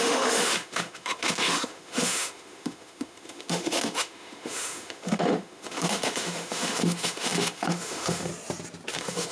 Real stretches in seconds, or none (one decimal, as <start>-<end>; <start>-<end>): 8.3-8.9